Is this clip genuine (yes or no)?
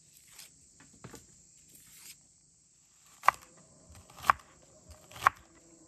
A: no